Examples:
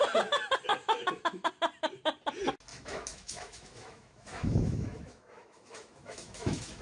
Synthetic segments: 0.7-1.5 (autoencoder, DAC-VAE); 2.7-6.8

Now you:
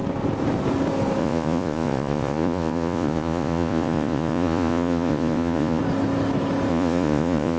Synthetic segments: 1.2-5.8 (vocoder, Vocos); 6.7-7.6